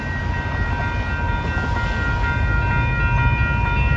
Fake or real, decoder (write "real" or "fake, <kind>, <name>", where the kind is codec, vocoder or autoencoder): real